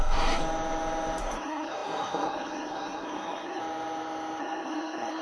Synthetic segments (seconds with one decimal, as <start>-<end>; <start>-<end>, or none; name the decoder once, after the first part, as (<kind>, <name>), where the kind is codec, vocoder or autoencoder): 0.0-0.4 (codec, SNAC); 1.2-3.6; 4.4-5.2